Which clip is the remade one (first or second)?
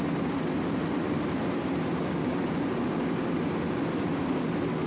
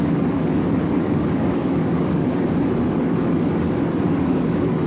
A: second